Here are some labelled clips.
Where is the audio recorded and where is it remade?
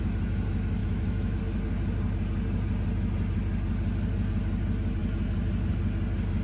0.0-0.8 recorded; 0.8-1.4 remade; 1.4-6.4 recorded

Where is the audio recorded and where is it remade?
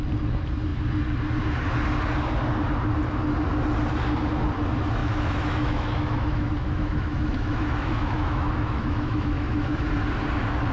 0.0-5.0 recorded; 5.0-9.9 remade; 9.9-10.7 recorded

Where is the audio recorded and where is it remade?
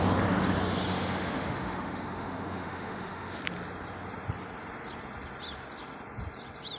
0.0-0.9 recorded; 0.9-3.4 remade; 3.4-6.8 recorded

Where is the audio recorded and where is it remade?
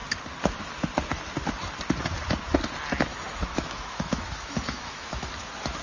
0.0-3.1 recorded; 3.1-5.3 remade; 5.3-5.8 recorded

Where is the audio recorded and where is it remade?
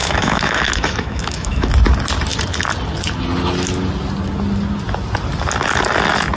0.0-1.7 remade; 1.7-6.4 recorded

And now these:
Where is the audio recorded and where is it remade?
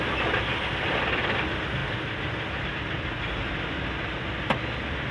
0.0-5.1 recorded